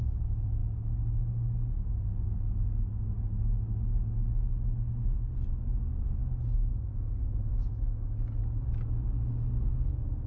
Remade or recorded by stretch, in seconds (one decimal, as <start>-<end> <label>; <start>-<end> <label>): 0.0-6.7 recorded; 6.7-8.4 remade; 8.4-10.3 recorded